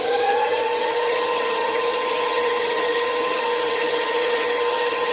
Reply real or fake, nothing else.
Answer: fake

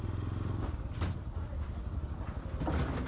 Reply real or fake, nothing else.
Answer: real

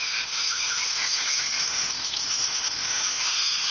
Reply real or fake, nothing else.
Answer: fake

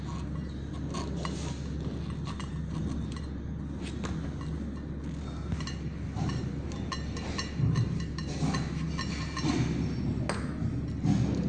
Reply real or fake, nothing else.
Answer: real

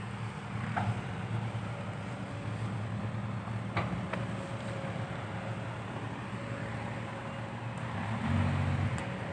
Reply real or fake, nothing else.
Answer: real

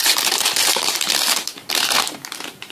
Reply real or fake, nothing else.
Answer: fake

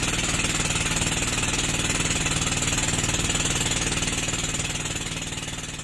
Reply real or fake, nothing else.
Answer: real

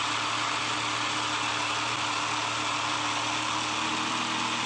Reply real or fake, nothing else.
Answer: real